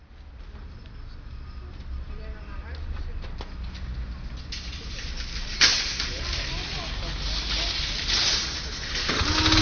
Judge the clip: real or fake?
real